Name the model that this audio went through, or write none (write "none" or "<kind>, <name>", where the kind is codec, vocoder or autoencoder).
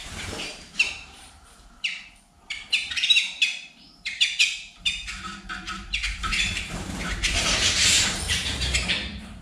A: vocoder, BigVGAN v2